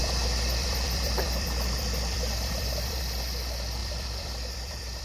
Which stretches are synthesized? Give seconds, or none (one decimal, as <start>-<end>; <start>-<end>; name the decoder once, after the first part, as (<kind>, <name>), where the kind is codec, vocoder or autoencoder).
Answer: 0.0-3.0 (vocoder, BigVGAN v2); 3.8-5.0